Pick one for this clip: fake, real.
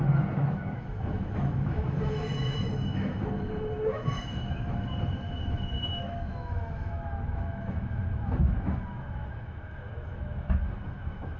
fake